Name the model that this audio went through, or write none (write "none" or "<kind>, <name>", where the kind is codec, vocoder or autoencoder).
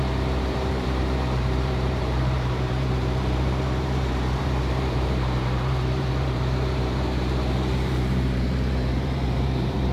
vocoder, BigVGAN v2